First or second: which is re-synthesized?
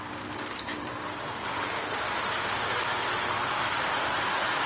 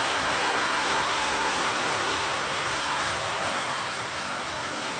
second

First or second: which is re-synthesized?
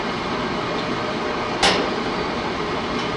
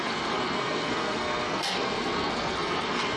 second